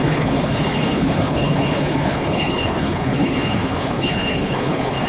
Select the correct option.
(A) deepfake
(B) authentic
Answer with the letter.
A